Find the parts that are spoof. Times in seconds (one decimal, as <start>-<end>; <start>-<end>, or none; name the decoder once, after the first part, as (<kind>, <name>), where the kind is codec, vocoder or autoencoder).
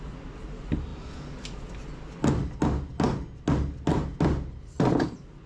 none